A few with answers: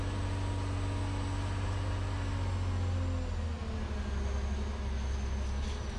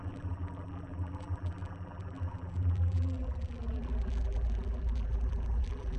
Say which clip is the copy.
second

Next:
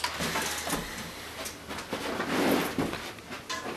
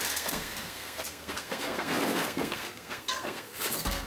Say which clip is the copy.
second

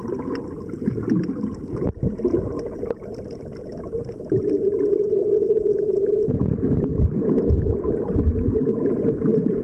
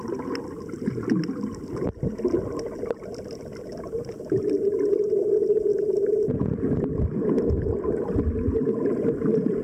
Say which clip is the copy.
first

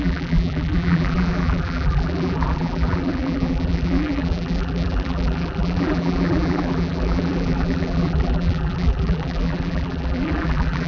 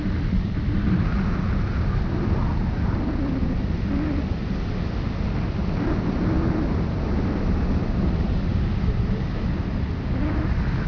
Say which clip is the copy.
first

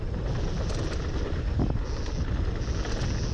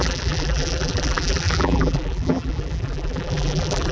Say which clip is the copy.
second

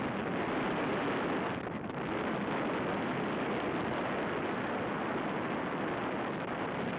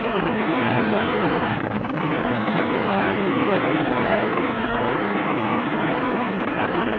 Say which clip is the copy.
second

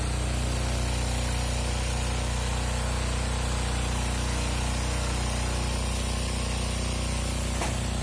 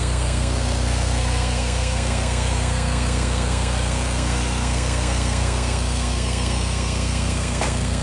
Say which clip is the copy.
second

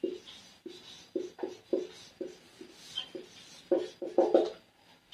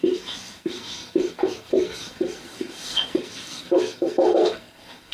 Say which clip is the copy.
second